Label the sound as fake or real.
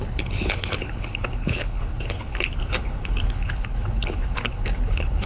fake